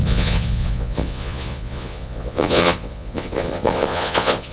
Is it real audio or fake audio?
fake